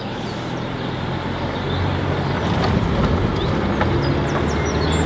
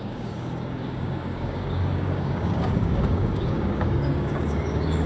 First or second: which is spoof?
second